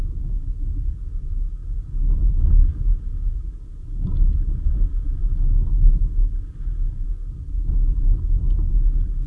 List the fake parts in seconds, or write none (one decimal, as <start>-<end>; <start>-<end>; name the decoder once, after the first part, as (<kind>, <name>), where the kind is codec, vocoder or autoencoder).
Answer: none